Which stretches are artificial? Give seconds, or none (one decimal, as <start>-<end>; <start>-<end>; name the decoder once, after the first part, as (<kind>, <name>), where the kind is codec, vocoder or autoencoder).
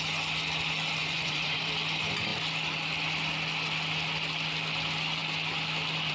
1.0-1.6 (vocoder, Vocos)